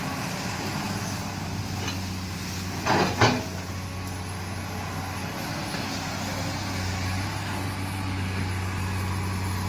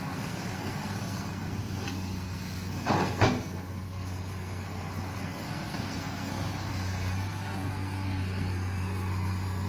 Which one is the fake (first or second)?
second